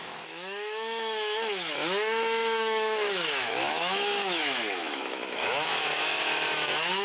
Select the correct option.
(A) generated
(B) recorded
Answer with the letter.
A